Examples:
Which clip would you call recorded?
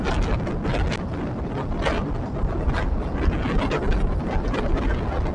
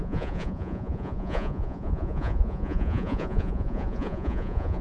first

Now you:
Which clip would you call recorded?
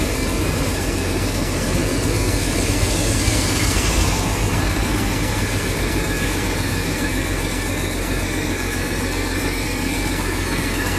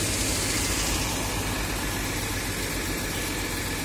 second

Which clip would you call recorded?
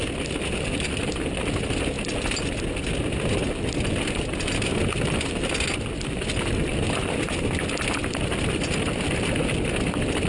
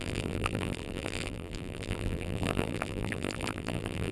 first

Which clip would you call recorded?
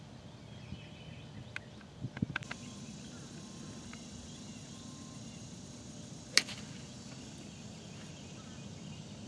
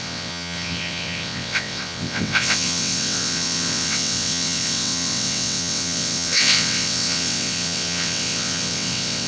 first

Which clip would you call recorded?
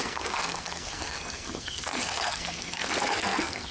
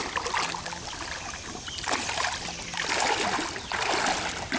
second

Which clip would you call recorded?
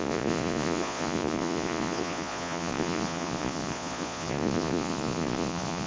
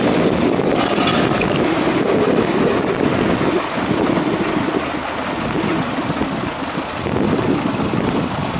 second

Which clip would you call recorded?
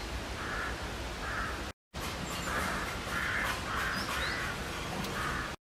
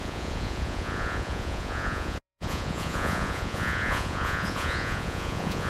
first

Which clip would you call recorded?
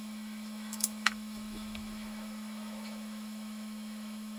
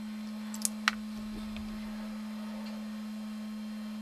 second